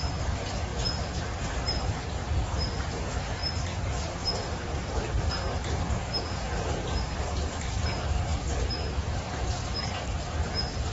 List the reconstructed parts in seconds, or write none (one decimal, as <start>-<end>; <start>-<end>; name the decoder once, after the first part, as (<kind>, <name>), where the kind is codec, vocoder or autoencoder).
none